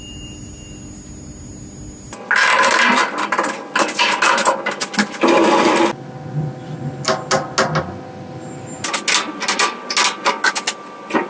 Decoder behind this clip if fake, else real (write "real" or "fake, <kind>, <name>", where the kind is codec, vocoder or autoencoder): real